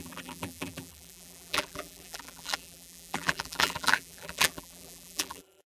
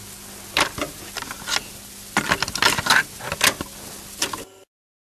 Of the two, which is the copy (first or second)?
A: first